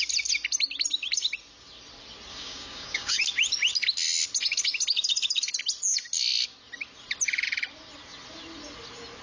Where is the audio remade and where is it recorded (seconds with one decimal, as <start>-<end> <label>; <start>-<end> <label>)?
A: 0.0-2.3 recorded; 2.3-3.2 remade; 3.2-9.2 recorded